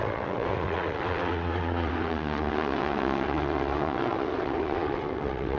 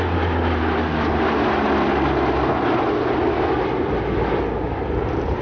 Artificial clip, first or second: first